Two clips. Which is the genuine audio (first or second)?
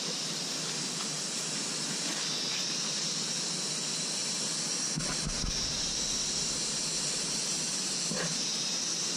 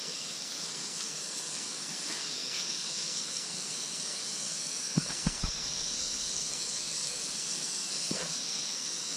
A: first